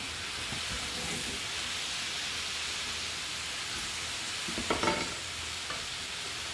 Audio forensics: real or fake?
real